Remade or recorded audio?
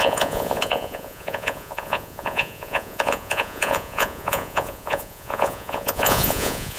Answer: remade